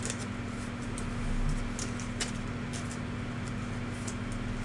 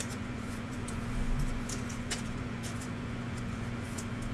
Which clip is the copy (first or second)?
second